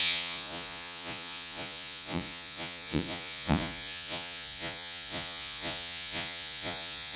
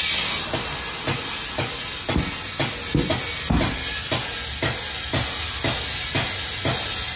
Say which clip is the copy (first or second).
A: first